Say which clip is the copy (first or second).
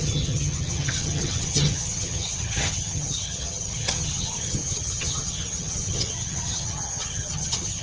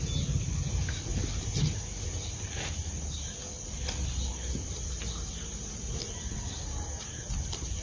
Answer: first